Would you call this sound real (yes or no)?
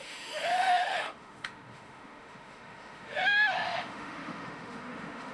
no